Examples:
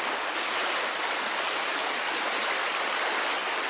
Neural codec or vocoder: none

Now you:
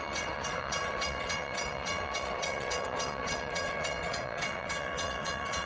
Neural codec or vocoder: vocoder, WaveNeXt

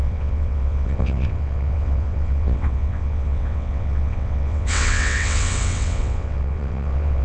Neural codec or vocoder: vocoder, WaveNeXt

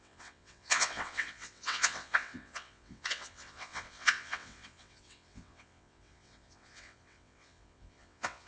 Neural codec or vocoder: vocoder, WaveNeXt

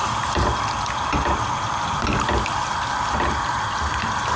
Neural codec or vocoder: none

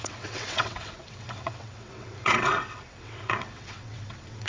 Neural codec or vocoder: vocoder, WaveNeXt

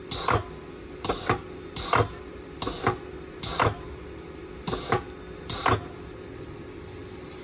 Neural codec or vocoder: none